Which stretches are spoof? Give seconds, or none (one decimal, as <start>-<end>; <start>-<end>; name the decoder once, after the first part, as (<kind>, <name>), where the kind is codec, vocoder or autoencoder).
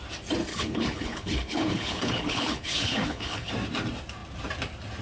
0.5-3.5 (codec, HILCodec)